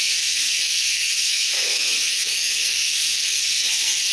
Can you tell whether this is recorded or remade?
remade